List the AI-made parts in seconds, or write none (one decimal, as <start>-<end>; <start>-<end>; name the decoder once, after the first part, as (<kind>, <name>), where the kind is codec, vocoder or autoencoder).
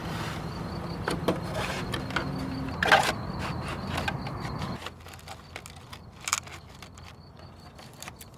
none